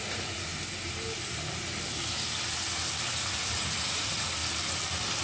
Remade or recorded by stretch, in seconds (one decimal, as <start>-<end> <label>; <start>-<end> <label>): 0.0-0.5 remade; 0.5-3.2 recorded; 3.2-4.4 remade; 4.4-5.2 recorded